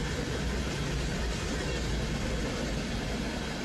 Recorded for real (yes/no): yes